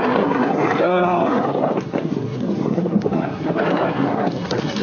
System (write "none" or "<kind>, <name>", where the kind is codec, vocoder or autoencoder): codec, SNAC